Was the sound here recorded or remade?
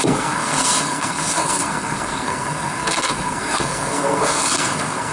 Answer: remade